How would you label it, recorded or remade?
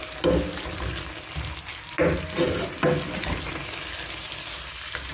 recorded